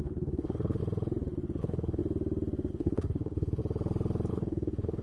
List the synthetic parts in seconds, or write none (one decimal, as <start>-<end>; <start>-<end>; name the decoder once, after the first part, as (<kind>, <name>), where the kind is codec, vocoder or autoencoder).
0.0-0.8 (codec, HILCodec); 1.6-2.0; 2.7-3.6; 4.3-5.0